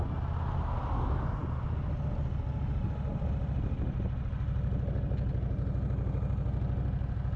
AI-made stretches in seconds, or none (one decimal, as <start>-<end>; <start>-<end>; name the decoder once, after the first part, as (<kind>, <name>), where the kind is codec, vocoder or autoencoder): none

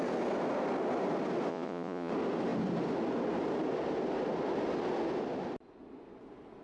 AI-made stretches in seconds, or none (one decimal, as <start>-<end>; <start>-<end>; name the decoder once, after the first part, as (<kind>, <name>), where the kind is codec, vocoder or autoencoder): 1.5-2.1 (vocoder, Vocos)

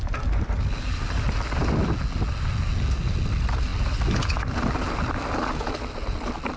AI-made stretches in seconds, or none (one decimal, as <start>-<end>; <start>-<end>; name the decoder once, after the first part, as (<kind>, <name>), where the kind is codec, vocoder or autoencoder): none

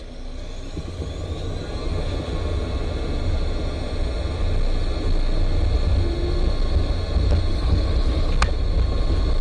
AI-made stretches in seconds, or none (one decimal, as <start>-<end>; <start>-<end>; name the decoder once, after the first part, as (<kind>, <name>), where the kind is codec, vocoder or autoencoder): 7.5-8.3 (codec, HILCodec)

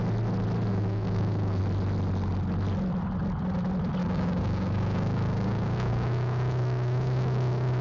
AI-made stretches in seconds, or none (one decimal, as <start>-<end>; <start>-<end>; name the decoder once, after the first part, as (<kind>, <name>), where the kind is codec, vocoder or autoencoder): 0.7-1.6 (codec, DAC); 4.0-7.8

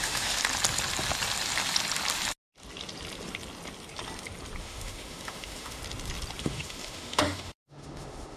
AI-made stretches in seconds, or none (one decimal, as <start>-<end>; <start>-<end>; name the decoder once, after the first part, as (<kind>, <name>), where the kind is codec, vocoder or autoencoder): 0.0-0.4 (autoencoder, DAC-VAE); 4.6-5.8; 6.4-8.4

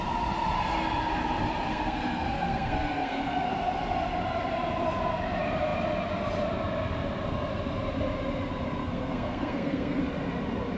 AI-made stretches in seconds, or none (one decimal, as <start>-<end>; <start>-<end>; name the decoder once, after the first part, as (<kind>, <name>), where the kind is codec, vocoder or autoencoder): 1.7-3.2 (codec, SNAC); 8.8-10.0

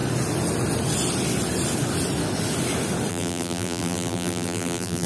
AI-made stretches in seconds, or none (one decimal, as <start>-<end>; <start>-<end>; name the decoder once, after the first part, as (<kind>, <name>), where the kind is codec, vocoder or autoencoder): 3.1-5.1 (vocoder, BigVGAN v2)